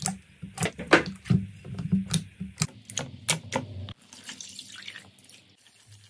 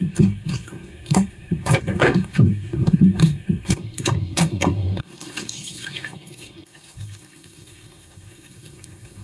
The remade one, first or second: second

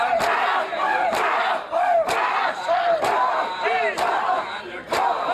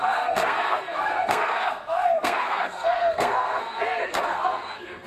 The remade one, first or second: second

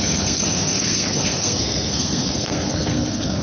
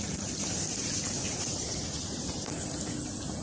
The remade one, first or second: first